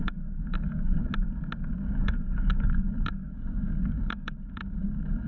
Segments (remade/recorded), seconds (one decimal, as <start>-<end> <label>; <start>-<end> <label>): 0.0-1.1 remade; 1.1-1.7 recorded; 1.7-5.3 remade